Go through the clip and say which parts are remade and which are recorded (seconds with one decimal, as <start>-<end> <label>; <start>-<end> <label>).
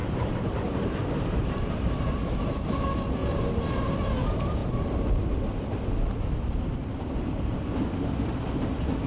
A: 0.0-2.8 remade; 2.8-3.2 recorded; 3.2-3.9 remade; 3.9-4.6 recorded; 4.6-5.4 remade; 5.4-9.1 recorded